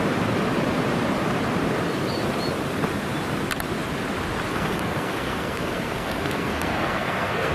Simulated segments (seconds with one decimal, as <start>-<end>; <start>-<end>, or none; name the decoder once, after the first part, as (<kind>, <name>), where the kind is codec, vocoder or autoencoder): 4.5-7.5 (codec, SNAC)

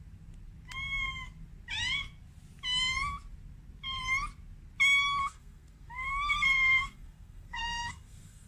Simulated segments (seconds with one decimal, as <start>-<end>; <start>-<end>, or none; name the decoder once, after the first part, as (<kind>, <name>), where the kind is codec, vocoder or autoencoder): 5.2-8.5 (codec, SNAC)